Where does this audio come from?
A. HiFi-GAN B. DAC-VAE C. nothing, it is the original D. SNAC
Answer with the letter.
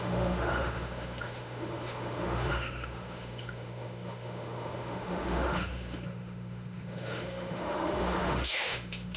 B